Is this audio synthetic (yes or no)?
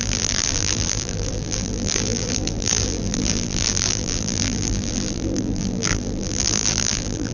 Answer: yes